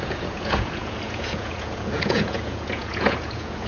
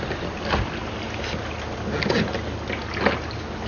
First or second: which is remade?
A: first